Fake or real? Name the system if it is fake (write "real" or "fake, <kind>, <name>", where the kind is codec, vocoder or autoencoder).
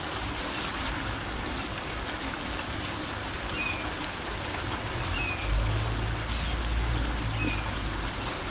real